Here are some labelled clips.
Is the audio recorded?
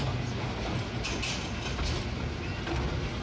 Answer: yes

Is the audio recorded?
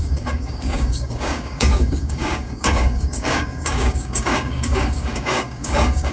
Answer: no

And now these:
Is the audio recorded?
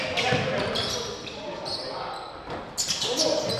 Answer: yes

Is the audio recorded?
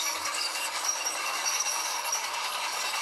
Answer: no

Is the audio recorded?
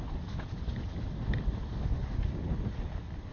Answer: yes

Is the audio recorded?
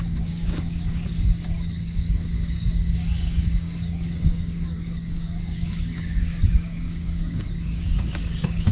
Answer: no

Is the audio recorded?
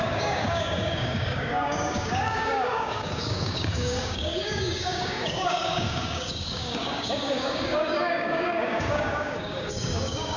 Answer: no